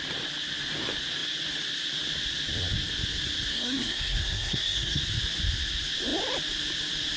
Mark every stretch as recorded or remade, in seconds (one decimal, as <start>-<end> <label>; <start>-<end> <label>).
0.0-3.5 recorded; 3.5-5.0 remade; 5.0-7.2 recorded